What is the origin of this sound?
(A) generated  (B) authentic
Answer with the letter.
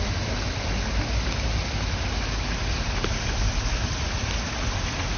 B